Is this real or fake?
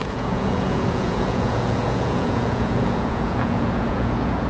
fake